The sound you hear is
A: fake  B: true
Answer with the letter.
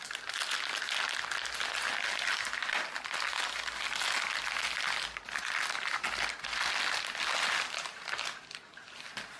B